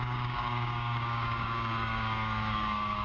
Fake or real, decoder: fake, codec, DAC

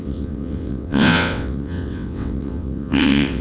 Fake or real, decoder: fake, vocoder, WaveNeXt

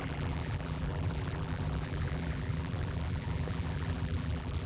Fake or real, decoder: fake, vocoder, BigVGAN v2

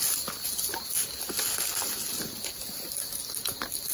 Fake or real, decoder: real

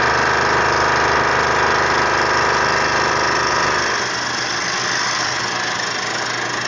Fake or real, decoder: real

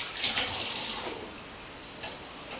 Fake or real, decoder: real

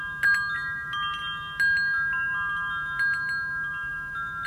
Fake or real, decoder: real